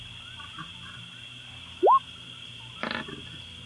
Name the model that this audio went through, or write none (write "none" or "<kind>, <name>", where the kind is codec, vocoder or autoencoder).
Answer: none